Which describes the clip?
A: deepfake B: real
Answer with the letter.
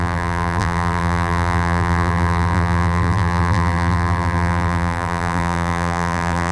A